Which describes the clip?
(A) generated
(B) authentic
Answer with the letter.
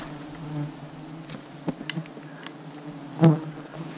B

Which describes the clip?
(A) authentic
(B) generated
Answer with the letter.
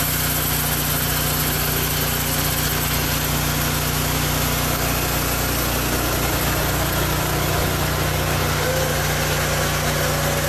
A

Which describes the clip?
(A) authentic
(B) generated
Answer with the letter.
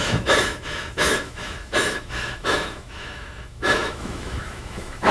B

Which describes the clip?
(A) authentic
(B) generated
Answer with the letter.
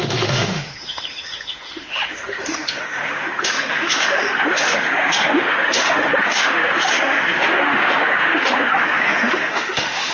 B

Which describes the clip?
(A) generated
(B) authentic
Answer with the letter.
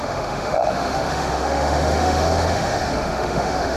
A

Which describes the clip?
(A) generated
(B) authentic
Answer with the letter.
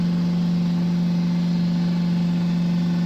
B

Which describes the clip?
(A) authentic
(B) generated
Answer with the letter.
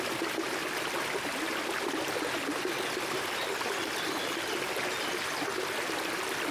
A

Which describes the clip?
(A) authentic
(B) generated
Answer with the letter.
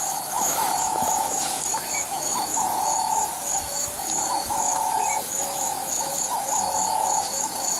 B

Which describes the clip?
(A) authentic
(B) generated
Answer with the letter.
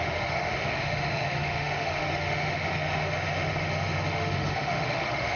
B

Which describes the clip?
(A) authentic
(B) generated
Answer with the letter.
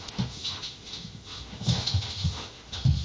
B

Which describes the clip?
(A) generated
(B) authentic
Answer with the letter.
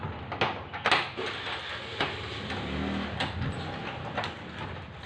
B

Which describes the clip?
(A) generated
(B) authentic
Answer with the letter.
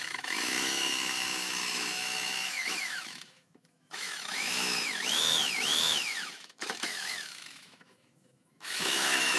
A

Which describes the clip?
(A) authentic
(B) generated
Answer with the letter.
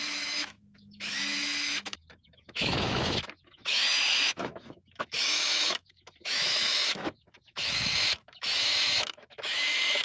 B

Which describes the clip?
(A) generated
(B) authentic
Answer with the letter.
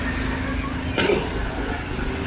B